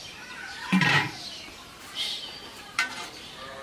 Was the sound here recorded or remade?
remade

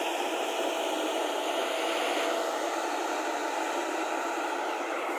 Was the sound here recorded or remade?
recorded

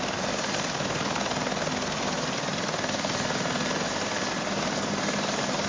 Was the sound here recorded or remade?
remade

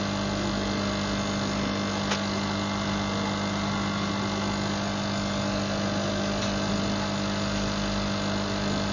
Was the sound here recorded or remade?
recorded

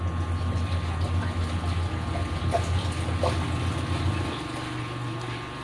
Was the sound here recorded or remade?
recorded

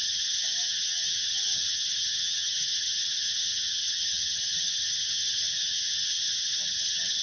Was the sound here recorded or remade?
remade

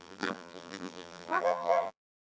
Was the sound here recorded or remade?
remade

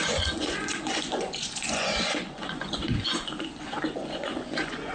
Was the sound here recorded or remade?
remade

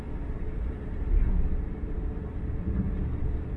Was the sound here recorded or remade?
recorded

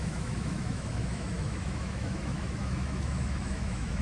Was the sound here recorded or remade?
remade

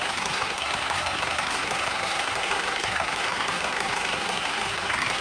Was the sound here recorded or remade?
remade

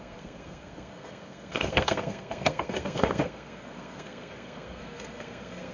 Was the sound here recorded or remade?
remade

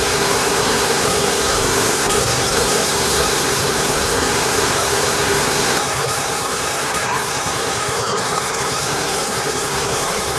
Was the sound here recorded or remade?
remade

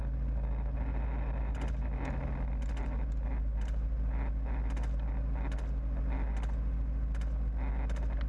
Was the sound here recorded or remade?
recorded